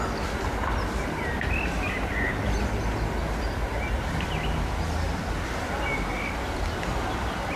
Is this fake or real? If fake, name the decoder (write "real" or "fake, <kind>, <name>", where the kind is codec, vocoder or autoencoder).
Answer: real